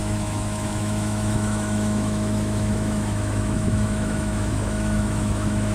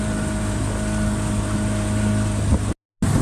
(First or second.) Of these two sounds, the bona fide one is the second